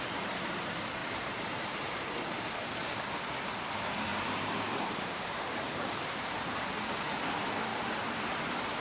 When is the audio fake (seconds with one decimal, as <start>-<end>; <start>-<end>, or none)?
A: 1.0-3.0; 4.1-6.6; 7.7-8.8